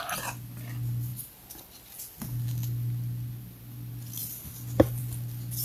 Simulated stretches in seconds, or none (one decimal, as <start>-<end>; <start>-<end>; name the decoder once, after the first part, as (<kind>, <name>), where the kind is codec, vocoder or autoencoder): none